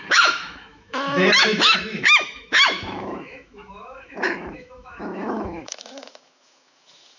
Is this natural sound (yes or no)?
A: no